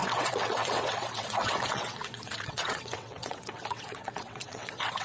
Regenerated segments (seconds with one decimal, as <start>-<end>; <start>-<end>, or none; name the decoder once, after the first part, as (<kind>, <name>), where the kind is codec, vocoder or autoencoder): 0.0-5.0 (vocoder, WaveNeXt)